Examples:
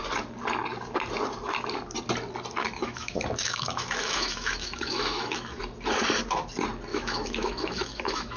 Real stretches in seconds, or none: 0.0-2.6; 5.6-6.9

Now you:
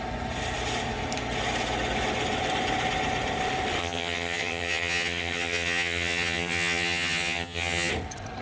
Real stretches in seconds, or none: 0.0-3.8; 7.9-8.4

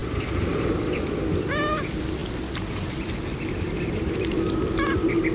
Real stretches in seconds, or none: 0.0-5.3

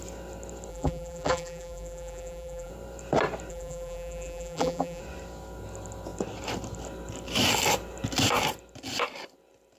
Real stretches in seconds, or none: 0.0-0.7; 2.7-3.5; 5.0-9.8

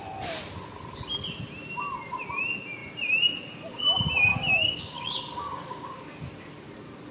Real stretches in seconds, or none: 0.0-4.3; 6.1-7.1

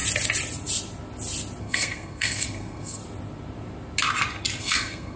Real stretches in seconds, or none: 0.0-1.6; 3.0-4.6